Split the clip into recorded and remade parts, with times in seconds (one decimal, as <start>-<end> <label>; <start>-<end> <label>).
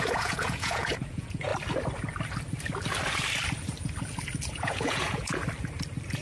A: 0.0-1.5 remade; 1.5-4.5 recorded; 4.5-5.4 remade; 5.4-6.2 recorded